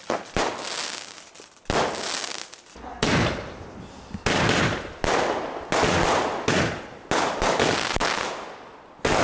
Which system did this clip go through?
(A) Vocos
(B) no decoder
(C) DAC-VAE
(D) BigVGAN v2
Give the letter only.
B